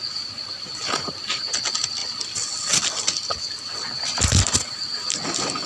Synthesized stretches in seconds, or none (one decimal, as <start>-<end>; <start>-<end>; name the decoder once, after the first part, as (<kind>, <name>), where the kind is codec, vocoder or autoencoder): none